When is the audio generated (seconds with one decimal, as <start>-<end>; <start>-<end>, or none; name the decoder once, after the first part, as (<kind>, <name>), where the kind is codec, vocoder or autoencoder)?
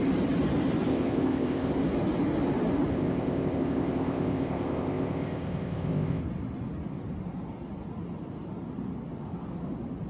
0.9-1.7 (codec, ZipCodec); 2.9-6.2